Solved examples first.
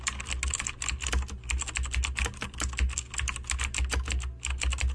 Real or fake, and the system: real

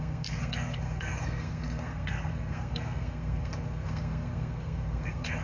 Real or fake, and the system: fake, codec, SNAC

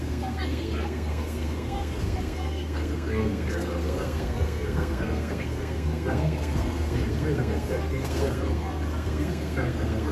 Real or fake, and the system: fake, codec, SNAC